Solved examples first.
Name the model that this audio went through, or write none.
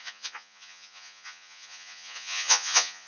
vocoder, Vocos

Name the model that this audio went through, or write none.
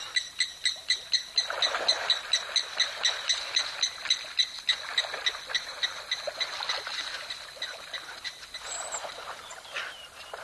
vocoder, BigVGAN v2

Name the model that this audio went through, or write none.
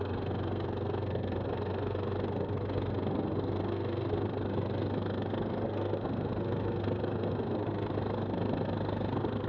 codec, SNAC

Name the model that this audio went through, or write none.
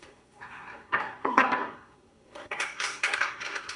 codec, SNAC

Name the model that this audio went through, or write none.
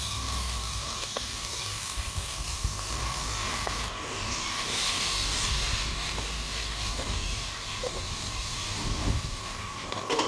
codec, DAC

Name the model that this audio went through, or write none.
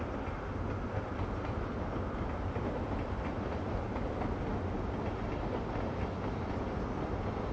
none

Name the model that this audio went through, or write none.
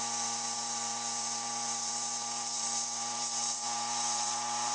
vocoder, BigVGAN v2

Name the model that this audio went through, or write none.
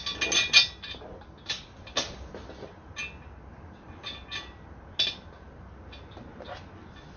none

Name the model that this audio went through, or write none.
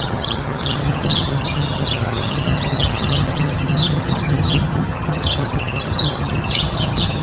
vocoder, HiFi-GAN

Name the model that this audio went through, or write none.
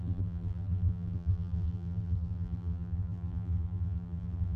vocoder, BigVGAN v2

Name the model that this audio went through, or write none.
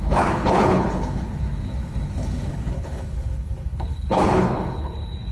codec, HILCodec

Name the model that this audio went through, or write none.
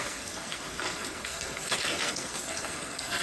codec, SNAC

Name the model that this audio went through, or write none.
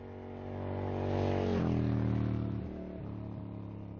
none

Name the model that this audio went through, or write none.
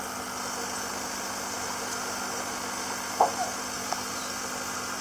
none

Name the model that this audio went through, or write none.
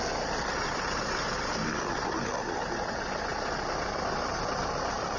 vocoder, BigVGAN v2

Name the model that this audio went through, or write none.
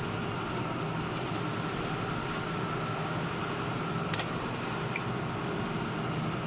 none